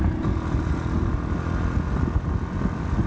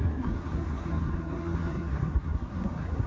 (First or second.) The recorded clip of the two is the first